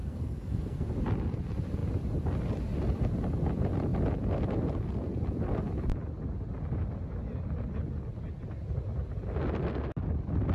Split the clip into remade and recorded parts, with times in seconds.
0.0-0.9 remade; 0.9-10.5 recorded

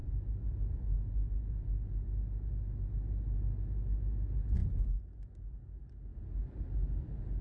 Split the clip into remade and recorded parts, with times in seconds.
0.0-7.4 recorded